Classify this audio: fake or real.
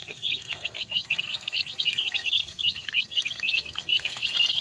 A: fake